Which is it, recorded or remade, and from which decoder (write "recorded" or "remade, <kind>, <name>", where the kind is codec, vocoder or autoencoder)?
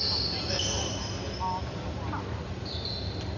recorded